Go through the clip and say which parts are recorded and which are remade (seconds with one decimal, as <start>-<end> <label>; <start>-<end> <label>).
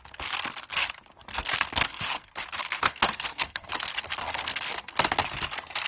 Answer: 0.0-1.3 recorded; 1.3-2.3 remade; 2.3-2.8 recorded; 2.8-3.7 remade; 3.7-4.2 recorded; 4.2-4.9 remade; 4.9-5.9 recorded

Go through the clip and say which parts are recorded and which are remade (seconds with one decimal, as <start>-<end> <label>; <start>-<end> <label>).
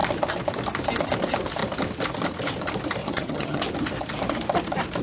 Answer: 0.0-3.0 recorded; 3.0-3.6 remade; 3.6-5.0 recorded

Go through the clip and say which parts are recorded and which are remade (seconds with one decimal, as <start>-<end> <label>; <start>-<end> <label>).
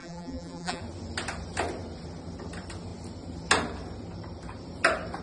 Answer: 0.0-0.8 remade; 0.8-5.2 recorded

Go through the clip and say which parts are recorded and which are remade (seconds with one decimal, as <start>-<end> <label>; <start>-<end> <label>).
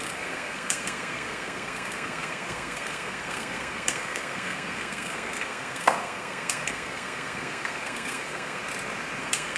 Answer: 0.0-8.6 remade; 8.6-9.2 recorded; 9.2-9.6 remade